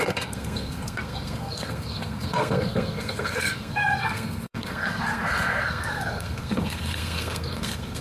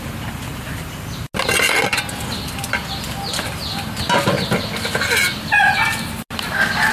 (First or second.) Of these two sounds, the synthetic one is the first